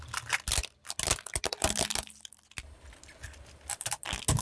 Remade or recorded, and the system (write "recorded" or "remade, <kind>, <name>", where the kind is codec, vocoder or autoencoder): recorded